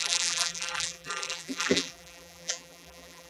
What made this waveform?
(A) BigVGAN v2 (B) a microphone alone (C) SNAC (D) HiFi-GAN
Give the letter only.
A